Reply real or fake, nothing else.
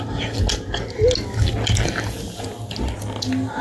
real